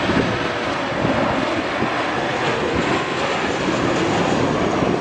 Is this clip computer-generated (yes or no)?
no